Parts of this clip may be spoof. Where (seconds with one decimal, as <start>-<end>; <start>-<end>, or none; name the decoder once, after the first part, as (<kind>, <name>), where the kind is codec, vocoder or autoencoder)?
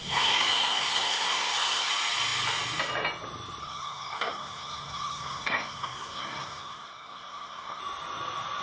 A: 0.0-1.9 (codec, SNAC); 3.6-7.8